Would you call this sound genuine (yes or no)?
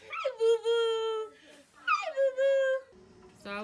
yes